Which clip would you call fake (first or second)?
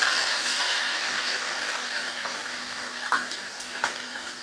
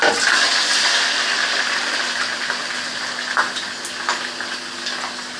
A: first